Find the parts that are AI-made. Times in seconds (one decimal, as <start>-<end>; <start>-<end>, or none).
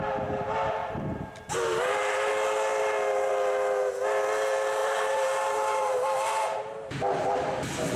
0.8-2.3; 4.8-6.9